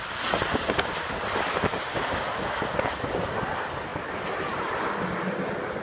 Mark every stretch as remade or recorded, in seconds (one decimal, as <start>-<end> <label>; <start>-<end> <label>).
0.0-5.8 recorded